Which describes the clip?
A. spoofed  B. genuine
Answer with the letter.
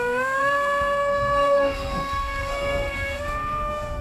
A